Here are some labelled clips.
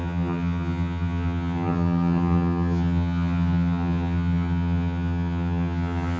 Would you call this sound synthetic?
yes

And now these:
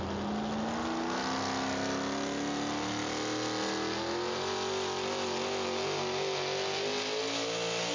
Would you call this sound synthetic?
no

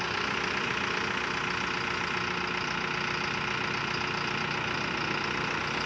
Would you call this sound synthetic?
no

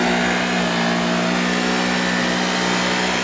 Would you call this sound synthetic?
no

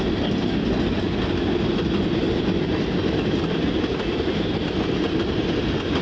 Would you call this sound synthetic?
no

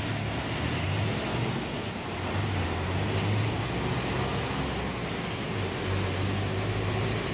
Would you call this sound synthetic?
no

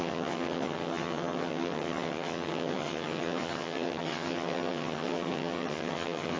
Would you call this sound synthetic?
yes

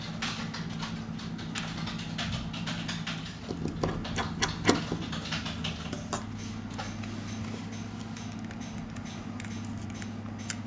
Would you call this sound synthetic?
no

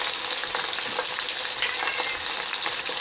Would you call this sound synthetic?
no